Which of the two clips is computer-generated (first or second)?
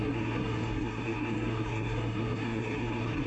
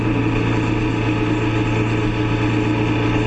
first